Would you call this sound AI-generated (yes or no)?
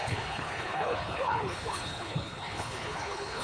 yes